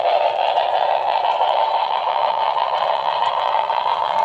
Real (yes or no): no